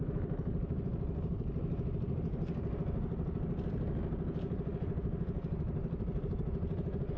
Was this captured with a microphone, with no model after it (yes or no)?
yes